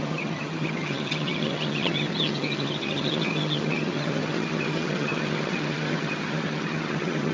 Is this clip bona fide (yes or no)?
no